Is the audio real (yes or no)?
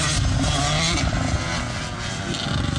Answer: yes